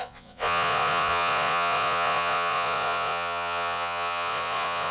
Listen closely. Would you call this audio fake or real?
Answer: fake